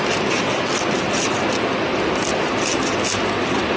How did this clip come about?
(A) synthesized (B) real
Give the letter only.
B